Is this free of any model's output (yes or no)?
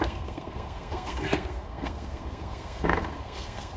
no